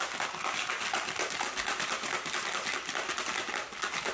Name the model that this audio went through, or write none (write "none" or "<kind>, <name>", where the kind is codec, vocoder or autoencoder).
none